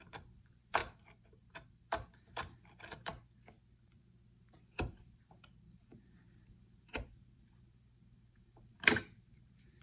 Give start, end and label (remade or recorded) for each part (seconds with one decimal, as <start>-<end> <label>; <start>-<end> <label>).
0.0-3.1 remade; 3.1-4.4 recorded; 4.4-9.8 remade